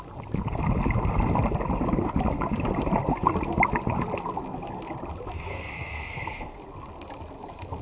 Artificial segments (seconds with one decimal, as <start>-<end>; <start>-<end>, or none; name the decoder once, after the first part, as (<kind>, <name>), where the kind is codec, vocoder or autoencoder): 5.5-6.6 (codec, SNAC)